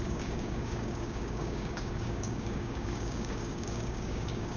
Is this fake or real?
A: fake